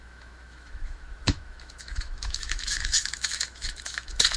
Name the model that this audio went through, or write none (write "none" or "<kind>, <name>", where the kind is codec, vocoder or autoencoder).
autoencoder, DAC-VAE